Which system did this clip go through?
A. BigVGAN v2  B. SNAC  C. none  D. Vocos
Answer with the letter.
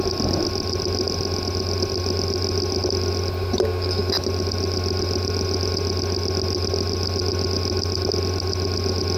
C